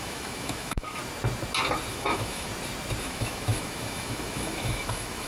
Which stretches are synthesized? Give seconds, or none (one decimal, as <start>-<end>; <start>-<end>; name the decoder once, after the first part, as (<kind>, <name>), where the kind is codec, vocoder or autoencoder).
0.0-1.0 (autoencoder, DAC-VAE); 1.9-2.5; 3.0-5.3